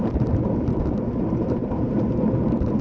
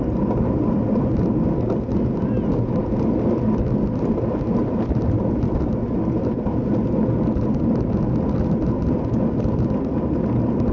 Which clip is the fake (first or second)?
first